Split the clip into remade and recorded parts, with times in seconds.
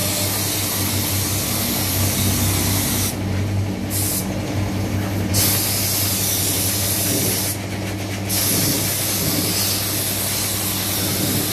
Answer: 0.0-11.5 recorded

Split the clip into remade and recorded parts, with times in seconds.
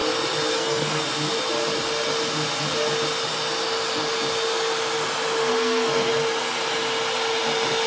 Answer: 0.0-0.5 recorded; 0.5-1.0 remade; 1.0-5.4 recorded; 5.4-6.1 remade; 6.1-7.9 recorded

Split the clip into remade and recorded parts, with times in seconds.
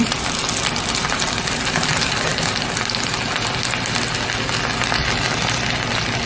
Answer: 0.0-6.3 recorded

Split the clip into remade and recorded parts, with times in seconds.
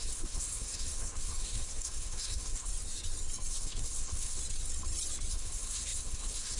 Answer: 0.0-2.7 remade; 2.7-3.5 recorded; 3.5-4.4 remade; 4.4-5.3 recorded; 5.3-6.6 remade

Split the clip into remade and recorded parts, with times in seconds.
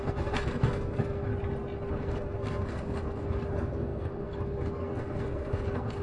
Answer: 0.0-1.3 remade; 1.3-1.9 recorded; 1.9-6.0 remade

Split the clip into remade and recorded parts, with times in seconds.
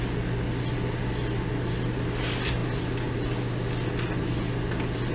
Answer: 0.0-5.1 recorded